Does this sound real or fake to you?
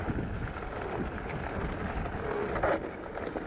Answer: real